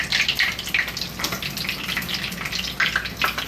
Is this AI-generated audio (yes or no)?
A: no